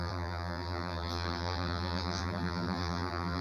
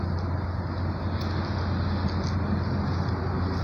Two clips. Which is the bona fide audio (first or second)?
second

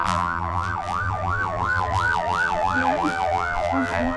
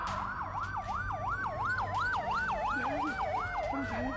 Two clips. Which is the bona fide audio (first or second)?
second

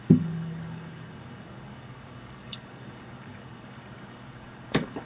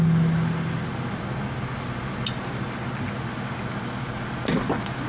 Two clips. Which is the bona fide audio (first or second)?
second